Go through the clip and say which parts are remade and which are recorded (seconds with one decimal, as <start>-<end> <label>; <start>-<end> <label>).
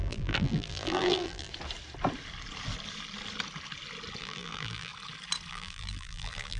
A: 0.0-1.5 remade; 1.5-4.2 recorded; 4.2-4.9 remade; 4.9-5.5 recorded; 5.5-6.6 remade